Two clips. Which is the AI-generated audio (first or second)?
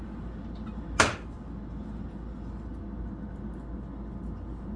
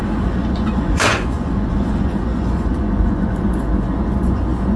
second